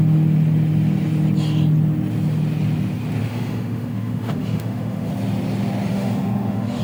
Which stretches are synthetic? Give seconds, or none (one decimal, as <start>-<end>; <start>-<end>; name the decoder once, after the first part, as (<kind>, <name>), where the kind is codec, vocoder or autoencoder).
3.2-5.1 (autoencoder, DAC-VAE); 5.9-6.8